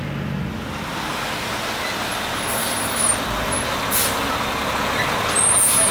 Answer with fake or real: real